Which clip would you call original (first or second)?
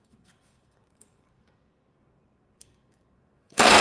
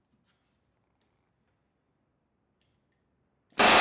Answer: second